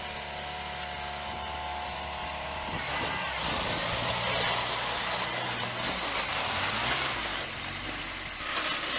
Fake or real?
real